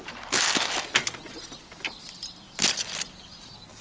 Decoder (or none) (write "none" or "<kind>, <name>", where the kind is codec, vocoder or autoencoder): none